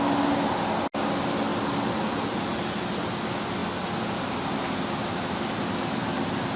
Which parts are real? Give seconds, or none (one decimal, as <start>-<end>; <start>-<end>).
0.0-6.6